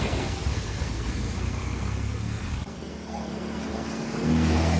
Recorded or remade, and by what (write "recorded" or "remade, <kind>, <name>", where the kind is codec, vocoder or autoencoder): remade, codec, SNAC